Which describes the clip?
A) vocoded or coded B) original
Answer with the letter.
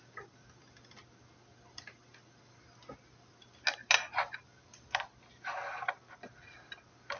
B